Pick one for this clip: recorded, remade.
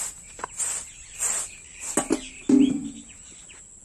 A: recorded